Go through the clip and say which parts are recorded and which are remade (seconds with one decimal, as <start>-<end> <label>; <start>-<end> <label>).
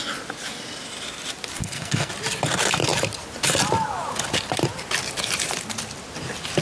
0.0-1.6 recorded; 1.6-2.1 remade; 2.1-6.6 recorded